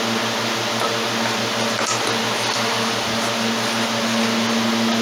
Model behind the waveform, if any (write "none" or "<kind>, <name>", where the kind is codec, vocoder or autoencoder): none